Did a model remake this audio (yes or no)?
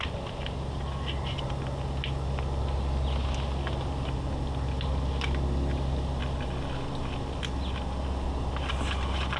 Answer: no